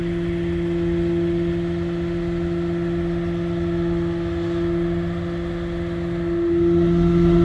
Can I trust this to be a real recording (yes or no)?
yes